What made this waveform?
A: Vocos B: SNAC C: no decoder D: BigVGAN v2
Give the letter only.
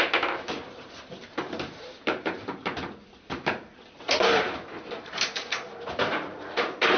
D